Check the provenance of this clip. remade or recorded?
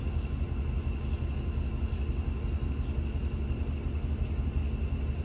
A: recorded